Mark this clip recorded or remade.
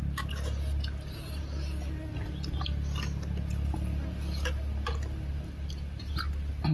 recorded